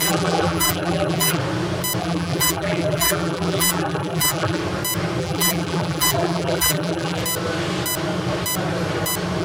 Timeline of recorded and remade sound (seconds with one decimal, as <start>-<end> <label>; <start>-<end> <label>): 0.0-1.4 remade; 1.4-2.0 recorded; 2.0-4.6 remade; 4.6-5.2 recorded; 5.2-7.2 remade; 7.2-9.4 recorded